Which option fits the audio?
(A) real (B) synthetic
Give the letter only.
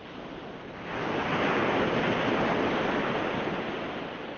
A